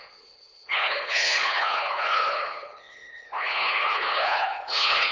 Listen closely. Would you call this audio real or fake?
fake